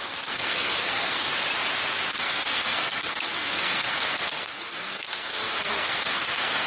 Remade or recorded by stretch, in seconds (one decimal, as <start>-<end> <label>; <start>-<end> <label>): 0.0-1.3 remade; 1.3-2.1 recorded; 2.1-6.7 remade